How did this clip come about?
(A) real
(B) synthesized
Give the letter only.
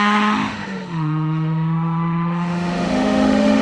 B